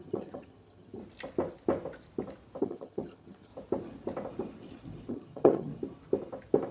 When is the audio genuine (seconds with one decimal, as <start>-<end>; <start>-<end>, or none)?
1.0-2.6; 3.5-5.1; 5.7-6.7